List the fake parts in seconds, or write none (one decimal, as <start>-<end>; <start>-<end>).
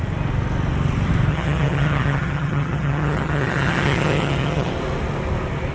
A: 1.3-4.7